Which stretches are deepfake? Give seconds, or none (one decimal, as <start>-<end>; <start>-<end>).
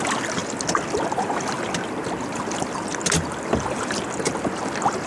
none